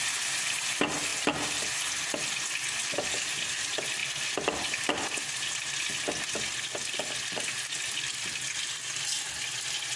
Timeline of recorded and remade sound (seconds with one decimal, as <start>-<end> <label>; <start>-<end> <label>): 0.0-10.0 recorded